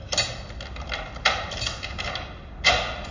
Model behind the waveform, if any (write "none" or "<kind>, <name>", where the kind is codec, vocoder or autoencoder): none